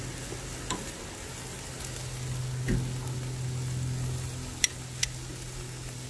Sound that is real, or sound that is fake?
real